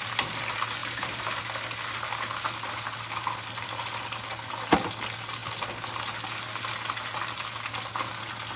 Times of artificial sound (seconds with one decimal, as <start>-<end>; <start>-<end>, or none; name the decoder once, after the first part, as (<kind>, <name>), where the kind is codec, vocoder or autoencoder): 0.8-1.4 (vocoder, BigVGAN v2)